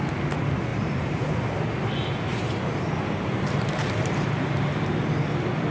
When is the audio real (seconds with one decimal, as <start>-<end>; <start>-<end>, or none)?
0.0-0.7; 1.4-2.3; 4.9-5.7